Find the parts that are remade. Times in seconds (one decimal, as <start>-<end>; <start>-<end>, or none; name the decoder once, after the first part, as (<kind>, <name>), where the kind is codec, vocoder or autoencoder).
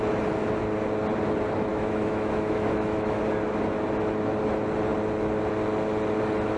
1.7-3.2 (autoencoder, DAC-VAE)